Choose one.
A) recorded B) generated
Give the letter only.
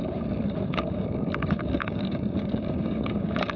B